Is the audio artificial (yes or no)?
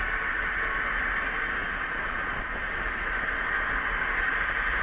no